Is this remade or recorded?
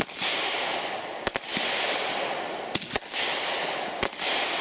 recorded